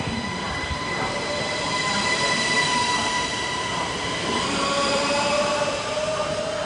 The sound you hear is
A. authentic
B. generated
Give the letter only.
B